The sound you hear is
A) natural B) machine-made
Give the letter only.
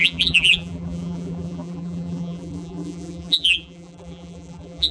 B